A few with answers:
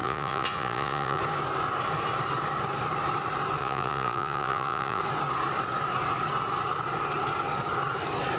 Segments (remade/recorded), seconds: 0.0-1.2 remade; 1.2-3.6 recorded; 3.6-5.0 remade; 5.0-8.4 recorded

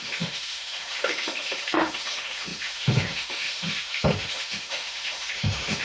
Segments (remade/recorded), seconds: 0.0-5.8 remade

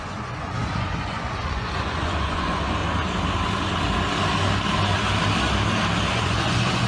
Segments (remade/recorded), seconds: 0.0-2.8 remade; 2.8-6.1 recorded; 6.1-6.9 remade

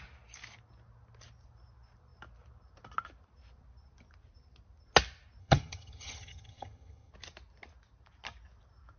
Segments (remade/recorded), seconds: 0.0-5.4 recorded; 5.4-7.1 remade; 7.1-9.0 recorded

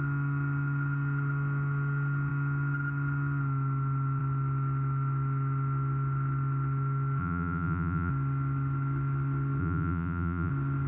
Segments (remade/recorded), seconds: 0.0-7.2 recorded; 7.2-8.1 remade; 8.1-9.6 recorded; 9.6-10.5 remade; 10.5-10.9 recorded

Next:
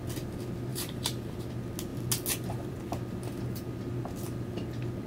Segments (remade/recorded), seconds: 0.0-0.7 recorded; 0.7-1.5 remade; 1.5-5.1 recorded

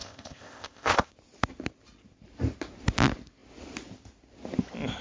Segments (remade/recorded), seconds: 0.0-1.1 remade; 1.1-5.0 recorded